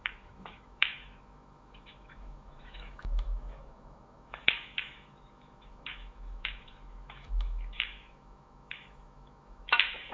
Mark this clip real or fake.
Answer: fake